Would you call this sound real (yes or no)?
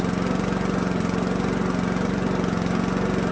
yes